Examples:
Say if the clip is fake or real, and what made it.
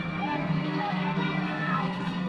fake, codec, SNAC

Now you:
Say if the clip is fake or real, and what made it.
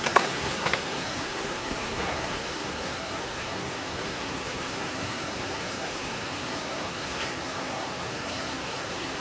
fake, codec, SNAC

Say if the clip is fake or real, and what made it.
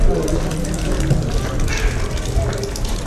real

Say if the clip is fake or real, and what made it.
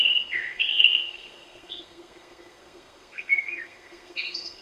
fake, codec, SNAC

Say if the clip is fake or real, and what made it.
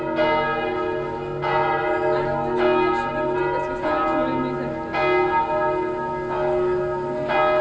real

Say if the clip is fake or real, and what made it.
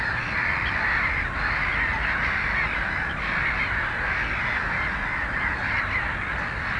real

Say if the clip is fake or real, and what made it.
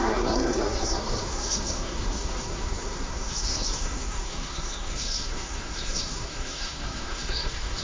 fake, codec, SNAC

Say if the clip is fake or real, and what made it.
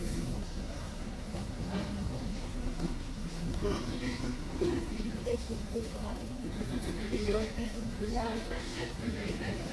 fake, codec, SNAC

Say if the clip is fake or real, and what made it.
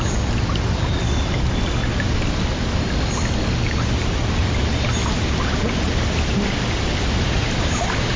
real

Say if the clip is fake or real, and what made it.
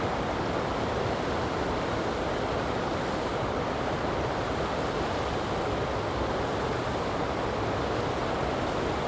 real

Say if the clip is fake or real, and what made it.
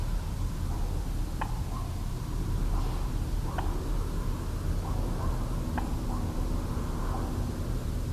real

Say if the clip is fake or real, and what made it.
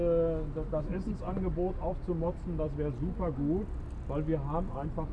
real